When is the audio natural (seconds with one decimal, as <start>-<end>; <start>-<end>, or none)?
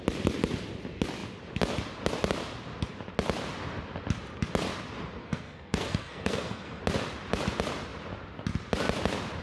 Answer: 0.0-5.2; 6.8-9.4